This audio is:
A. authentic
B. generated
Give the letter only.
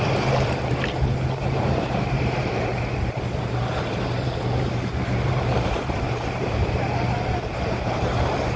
B